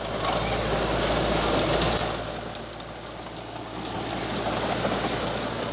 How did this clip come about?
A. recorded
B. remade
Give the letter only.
A